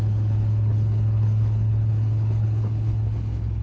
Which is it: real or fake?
fake